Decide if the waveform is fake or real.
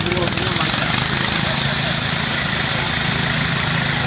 real